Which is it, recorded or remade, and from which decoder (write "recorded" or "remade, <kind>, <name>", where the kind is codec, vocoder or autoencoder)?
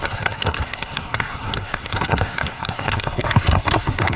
remade, codec, SNAC